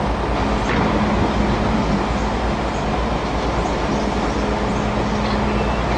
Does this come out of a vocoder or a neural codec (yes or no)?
no